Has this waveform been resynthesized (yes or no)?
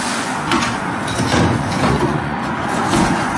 yes